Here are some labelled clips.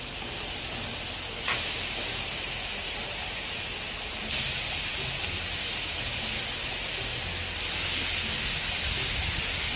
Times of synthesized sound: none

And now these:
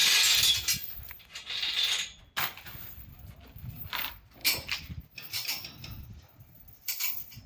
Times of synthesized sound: 4.4-4.9

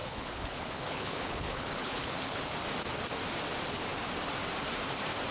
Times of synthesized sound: 0.0-2.4

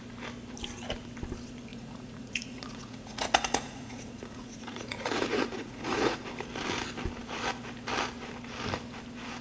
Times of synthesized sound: 1.7-6.3

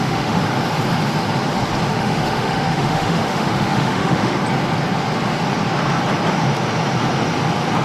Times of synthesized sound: 0.0-0.4; 1.9-4.4